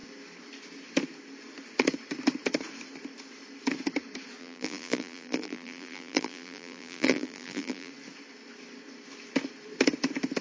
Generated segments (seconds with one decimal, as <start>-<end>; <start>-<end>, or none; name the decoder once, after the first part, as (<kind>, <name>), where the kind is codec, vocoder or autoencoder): 4.4-7.9 (vocoder, BigVGAN v2)